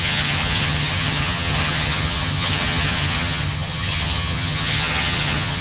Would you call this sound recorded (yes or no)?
no